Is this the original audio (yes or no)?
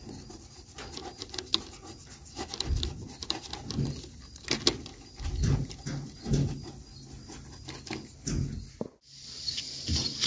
yes